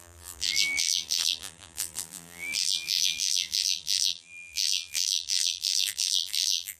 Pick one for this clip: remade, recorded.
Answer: remade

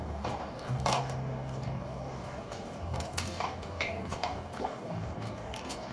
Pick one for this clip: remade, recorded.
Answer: remade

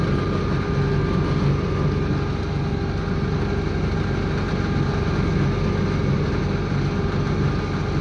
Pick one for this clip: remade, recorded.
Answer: recorded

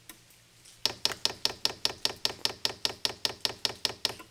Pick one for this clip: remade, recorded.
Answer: recorded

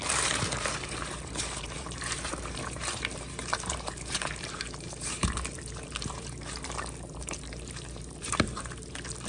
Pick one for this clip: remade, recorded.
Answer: remade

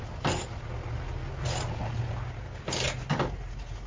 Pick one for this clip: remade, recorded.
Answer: recorded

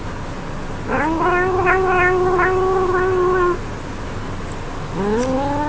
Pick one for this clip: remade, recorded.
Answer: recorded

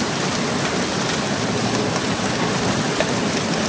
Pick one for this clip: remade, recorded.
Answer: recorded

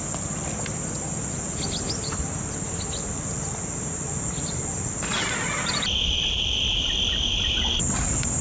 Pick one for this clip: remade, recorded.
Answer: recorded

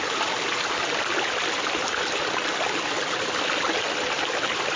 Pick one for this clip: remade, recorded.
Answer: recorded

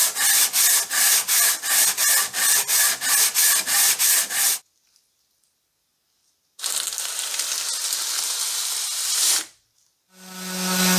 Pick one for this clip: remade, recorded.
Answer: recorded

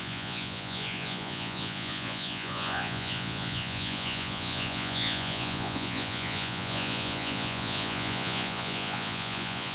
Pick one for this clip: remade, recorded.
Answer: remade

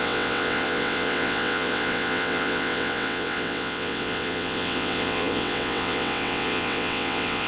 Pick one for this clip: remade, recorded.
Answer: remade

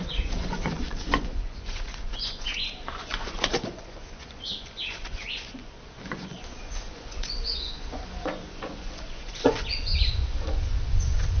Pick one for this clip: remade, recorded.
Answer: remade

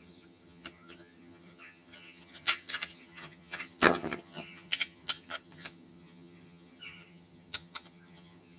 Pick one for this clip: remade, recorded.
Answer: remade